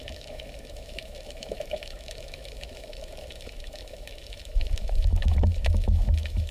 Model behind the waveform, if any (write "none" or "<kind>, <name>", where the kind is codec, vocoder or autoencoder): autoencoder, DAC-VAE